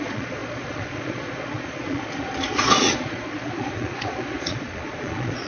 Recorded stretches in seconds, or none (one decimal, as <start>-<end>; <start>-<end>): none